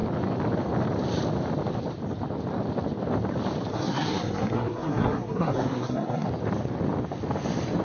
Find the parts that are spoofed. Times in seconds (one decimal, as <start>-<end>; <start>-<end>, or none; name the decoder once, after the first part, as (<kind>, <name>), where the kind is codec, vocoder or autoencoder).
3.7-6.3 (codec, SNAC)